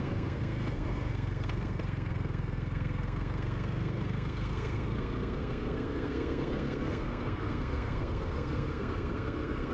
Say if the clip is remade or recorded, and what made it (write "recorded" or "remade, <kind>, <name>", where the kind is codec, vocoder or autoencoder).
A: remade, codec, SNAC